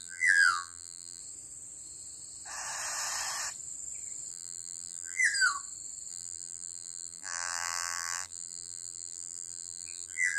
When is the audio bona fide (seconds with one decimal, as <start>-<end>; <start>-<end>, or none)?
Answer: 1.2-4.3; 5.2-6.1